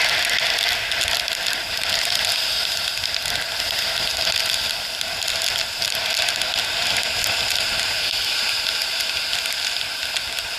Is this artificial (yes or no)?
no